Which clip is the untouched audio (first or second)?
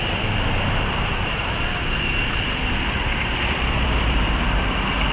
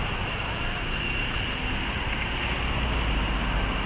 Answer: second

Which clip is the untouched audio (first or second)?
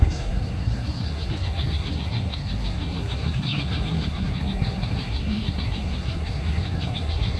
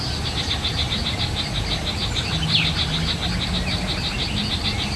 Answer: second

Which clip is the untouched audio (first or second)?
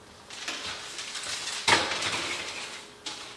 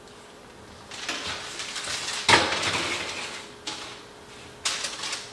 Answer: second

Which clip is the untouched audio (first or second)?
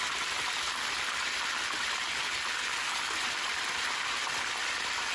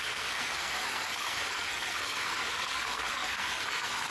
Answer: first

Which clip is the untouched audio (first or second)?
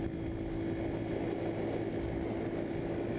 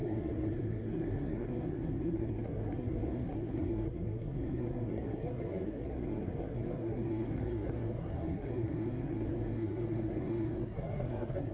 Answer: first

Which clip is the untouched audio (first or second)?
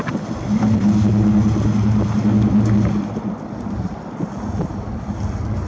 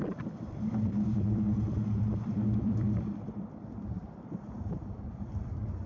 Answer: first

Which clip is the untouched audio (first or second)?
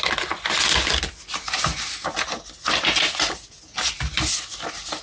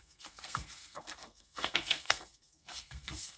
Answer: first